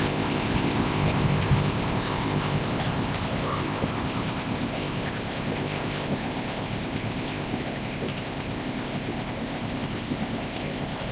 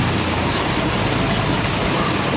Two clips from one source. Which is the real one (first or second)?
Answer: second